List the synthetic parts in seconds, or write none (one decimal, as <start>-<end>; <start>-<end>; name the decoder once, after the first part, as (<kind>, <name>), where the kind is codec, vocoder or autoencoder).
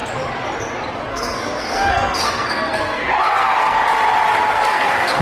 1.1-3.9 (codec, SNAC); 4.5-5.2